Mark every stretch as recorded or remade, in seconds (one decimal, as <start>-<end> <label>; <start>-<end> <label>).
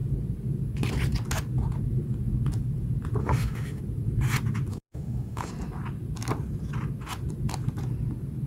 0.0-3.2 recorded; 3.2-3.8 remade; 3.8-4.7 recorded; 4.7-5.5 remade; 5.5-8.5 recorded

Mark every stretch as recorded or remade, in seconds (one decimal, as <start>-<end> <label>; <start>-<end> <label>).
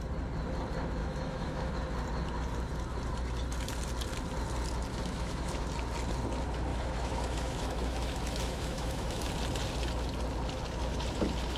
0.0-1.0 recorded; 1.0-1.7 remade; 1.7-4.9 recorded; 4.9-5.7 remade; 5.7-6.7 recorded; 6.7-9.3 remade; 9.3-11.6 recorded